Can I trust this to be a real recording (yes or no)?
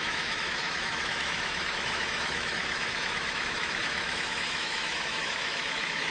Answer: no